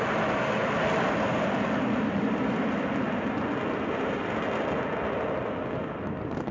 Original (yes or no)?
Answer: yes